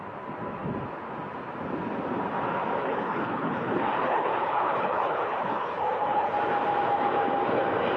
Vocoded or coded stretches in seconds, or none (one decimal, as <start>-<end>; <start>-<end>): 2.8-6.3